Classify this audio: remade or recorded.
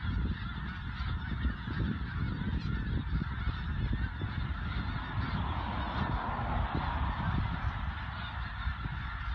recorded